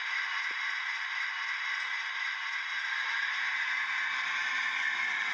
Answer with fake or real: real